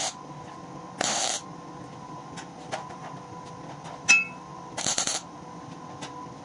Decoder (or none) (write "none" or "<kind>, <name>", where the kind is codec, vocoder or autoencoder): none